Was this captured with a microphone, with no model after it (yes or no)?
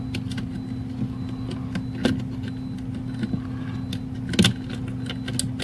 yes